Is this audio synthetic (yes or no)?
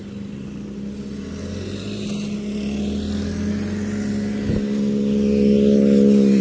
no